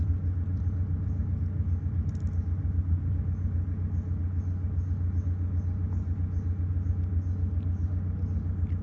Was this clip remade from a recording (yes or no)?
no